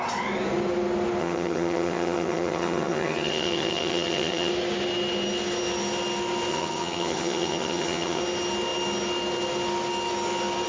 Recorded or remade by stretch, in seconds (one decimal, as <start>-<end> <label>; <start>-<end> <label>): 0.0-1.2 recorded; 1.2-4.5 remade; 4.5-6.5 recorded; 6.5-8.2 remade; 8.2-10.7 recorded